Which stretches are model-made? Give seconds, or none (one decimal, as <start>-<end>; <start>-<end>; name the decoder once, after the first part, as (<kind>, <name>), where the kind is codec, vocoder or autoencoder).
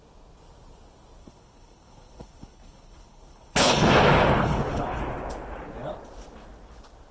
1.2-3.9 (codec, HILCodec); 4.4-5.0